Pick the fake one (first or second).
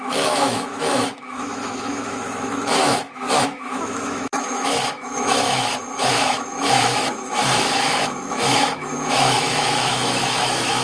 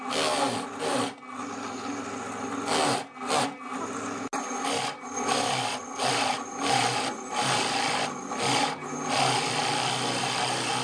first